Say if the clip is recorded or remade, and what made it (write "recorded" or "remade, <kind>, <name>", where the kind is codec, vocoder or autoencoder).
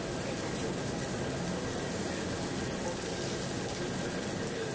recorded